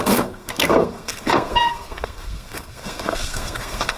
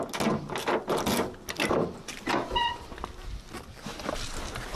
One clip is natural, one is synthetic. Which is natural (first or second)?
second